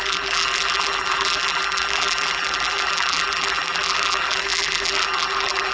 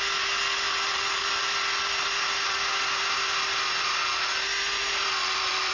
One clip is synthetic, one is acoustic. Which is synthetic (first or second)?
first